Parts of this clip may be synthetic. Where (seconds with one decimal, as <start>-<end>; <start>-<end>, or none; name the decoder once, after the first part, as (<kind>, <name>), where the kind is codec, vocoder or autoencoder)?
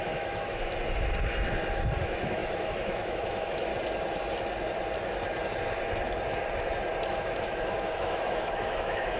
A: 0.0-0.7 (autoencoder, DAC-VAE); 2.0-3.7; 7.1-9.2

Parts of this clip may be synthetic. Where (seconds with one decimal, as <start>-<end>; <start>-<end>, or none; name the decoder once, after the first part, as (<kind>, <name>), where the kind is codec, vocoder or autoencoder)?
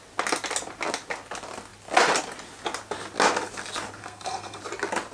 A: 4.0-4.6 (codec, SNAC)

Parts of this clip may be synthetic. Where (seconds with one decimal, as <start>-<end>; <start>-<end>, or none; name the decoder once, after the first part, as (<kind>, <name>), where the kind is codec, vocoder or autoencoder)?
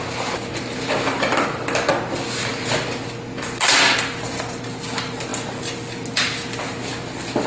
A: none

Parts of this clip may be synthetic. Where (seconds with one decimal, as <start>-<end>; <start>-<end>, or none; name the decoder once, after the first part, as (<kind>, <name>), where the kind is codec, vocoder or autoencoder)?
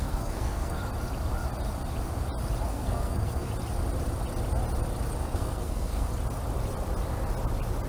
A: 0.0-0.8 (codec, SNAC); 2.7-3.5; 5.2-6.1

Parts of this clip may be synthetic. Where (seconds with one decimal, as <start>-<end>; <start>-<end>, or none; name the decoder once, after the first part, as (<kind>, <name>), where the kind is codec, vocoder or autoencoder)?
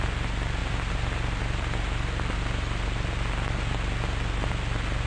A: 0.6-1.4 (vocoder, BigVGAN v2)